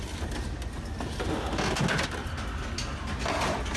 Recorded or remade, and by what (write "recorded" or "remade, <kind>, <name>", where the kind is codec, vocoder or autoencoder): recorded